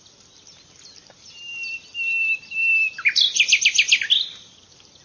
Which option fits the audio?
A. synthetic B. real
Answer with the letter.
B